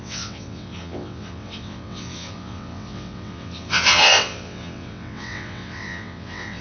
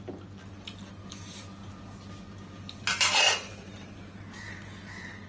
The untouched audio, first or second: second